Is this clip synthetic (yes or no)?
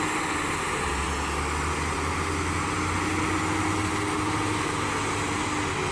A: no